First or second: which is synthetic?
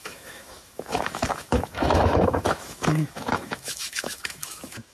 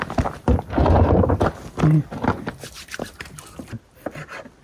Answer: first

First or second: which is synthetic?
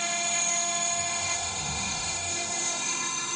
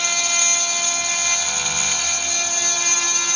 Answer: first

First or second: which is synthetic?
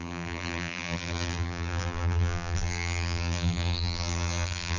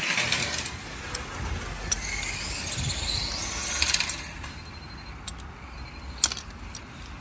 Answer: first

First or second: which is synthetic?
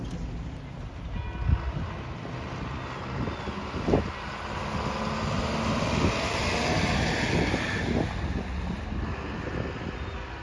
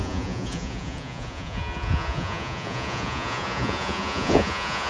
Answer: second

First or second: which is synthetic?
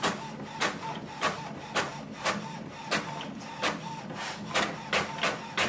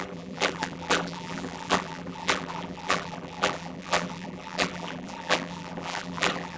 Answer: second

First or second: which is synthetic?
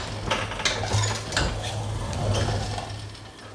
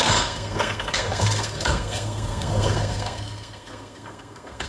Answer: second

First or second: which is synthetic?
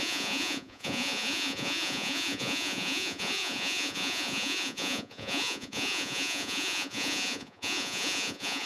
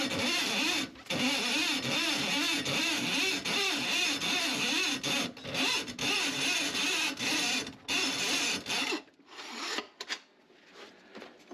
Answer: first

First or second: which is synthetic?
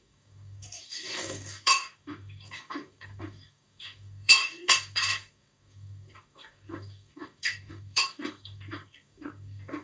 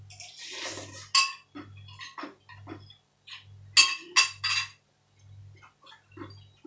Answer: first